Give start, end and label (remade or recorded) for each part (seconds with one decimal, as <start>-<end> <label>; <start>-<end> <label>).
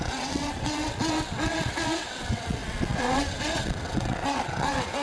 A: 0.0-5.0 remade